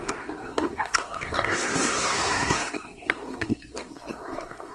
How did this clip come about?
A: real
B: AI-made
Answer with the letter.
B